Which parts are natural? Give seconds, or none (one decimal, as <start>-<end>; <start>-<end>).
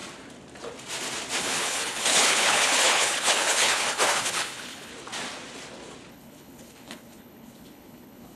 0.0-1.4; 4.9-6.1